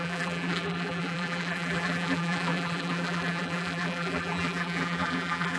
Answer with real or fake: fake